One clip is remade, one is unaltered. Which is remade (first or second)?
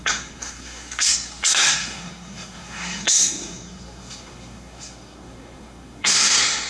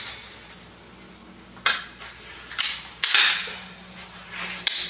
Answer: first